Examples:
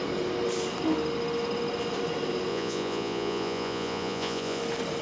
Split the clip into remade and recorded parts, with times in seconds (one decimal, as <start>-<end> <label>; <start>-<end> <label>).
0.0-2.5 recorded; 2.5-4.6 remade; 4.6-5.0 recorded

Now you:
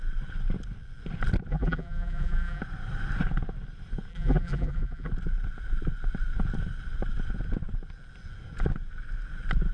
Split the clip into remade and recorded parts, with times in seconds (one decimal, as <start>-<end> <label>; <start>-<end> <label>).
0.0-1.5 recorded; 1.5-2.6 remade; 2.6-4.1 recorded; 4.1-5.1 remade; 5.1-9.7 recorded

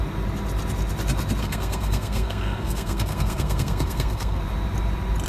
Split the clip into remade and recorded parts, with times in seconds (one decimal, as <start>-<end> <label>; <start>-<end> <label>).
0.0-1.4 recorded; 1.4-4.4 remade; 4.4-5.3 recorded